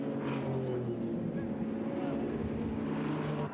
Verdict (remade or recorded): recorded